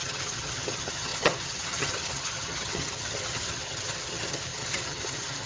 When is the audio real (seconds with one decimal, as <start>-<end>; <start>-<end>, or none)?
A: none